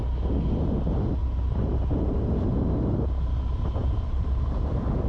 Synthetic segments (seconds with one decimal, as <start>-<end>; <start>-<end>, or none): 1.2-2.2; 3.8-5.1